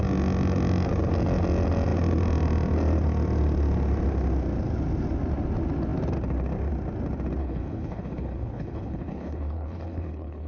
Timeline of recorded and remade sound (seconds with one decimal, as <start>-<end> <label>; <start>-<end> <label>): 0.0-7.4 recorded; 7.4-10.5 remade